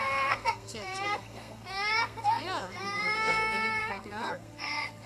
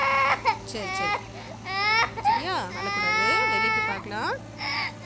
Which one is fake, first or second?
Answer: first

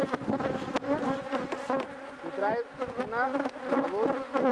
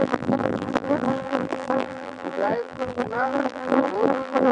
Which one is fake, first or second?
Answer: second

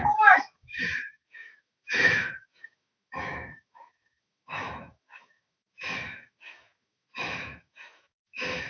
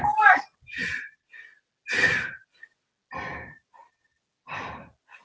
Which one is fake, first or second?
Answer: first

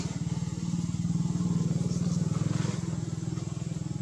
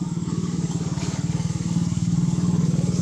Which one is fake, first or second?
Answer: second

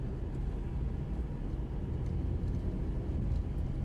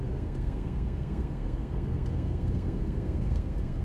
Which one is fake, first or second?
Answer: second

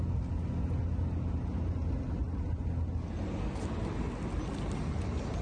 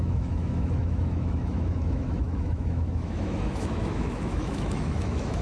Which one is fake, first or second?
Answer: second